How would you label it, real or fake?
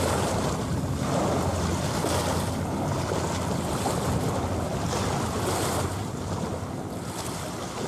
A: real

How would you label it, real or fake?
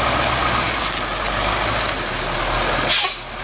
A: real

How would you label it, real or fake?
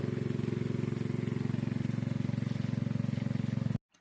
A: real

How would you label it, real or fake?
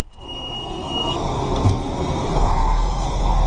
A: fake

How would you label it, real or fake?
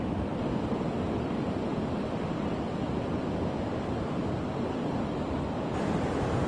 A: real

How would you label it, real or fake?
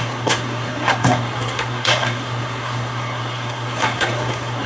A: fake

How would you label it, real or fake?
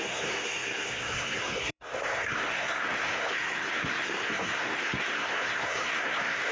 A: fake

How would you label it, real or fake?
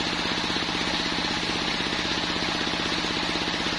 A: real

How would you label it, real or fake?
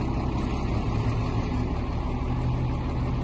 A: real